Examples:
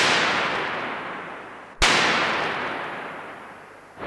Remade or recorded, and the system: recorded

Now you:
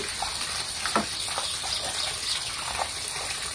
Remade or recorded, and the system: recorded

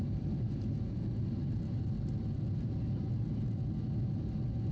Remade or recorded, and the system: recorded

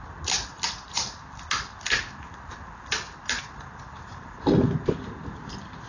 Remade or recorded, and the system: recorded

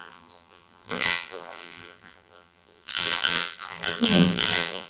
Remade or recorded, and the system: remade, vocoder, BigVGAN v2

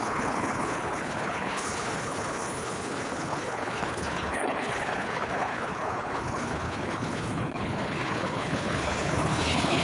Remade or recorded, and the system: remade, codec, HILCodec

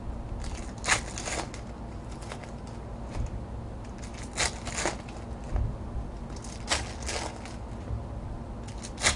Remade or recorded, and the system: recorded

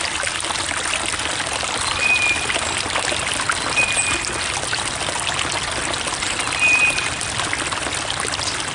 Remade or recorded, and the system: recorded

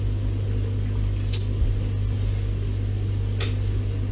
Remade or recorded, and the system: recorded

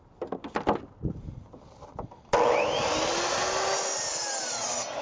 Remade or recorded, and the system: recorded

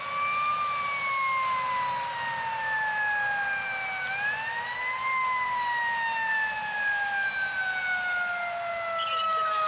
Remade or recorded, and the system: recorded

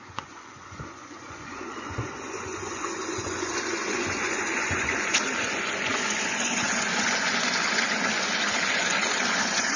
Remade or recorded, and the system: remade, vocoder, Vocos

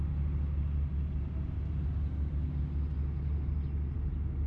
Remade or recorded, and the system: recorded